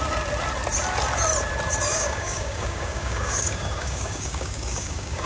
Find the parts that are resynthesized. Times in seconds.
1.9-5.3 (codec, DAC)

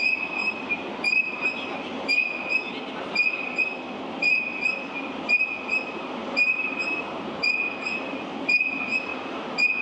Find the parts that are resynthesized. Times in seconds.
0.4-1.4 (vocoder, BigVGAN v2); 6.2-7.5

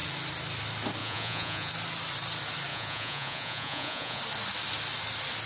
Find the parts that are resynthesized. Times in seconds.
1.0-1.7 (vocoder, Vocos); 2.7-4.2

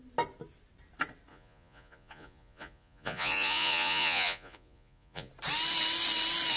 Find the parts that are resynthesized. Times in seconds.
1.3-5.3 (vocoder, Vocos)